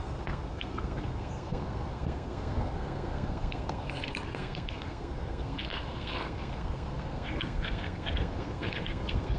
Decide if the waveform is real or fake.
fake